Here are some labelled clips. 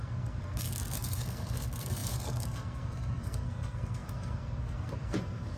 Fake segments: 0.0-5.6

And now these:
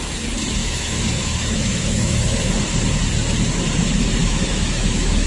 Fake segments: 0.6-2.5; 4.2-5.3

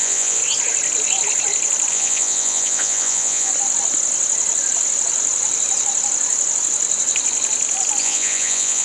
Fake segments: 0.0-0.4; 1.9-3.5; 8.0-8.8

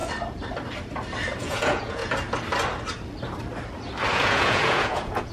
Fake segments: 1.4-2.0; 4.1-5.3

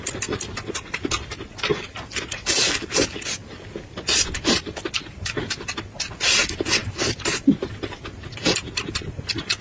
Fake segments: none

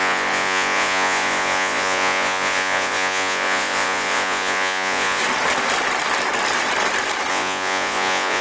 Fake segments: 0.0-5.2; 7.3-8.4